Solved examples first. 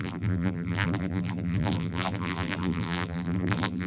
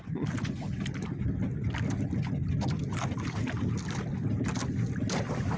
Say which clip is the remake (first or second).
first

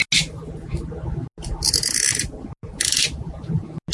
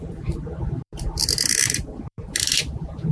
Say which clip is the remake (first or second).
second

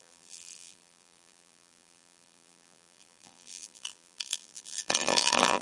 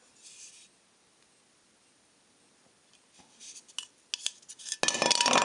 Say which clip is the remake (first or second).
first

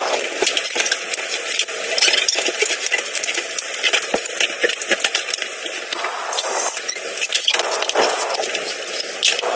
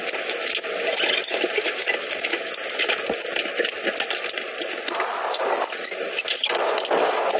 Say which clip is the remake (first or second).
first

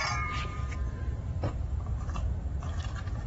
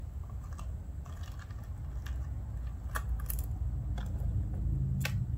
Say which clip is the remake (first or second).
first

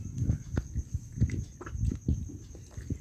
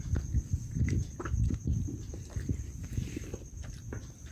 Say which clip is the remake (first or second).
second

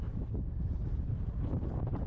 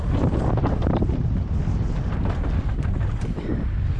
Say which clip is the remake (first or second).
first